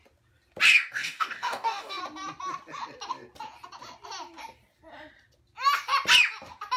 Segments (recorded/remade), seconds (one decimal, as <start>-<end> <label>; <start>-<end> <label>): 0.0-0.7 recorded; 0.7-2.0 remade; 2.0-6.8 recorded